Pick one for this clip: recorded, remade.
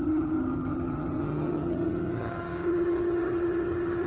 remade